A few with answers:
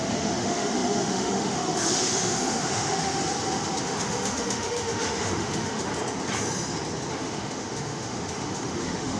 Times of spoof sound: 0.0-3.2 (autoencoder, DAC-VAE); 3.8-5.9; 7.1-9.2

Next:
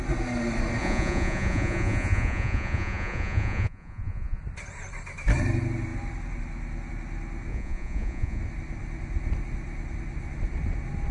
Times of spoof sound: 0.8-4.4 (vocoder, Vocos); 7.5-8.4

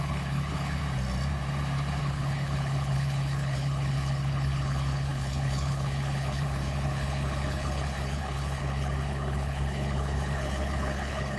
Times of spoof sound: 0.0-0.8 (codec, HILCodec); 2.0-11.4

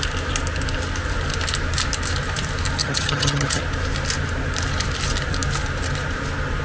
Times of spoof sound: 2.8-3.6 (vocoder, HiFi-GAN)

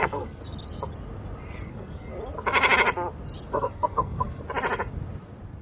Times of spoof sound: 0.0-0.4 (codec, SNAC); 1.6-2.1; 3.5-4.4

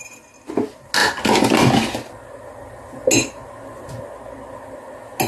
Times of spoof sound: none

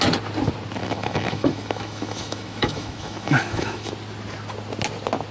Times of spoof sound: 0.8-3.9 (autoencoder, DAC-VAE)

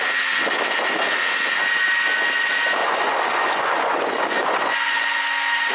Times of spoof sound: 2.8-5.2 (vocoder, Vocos)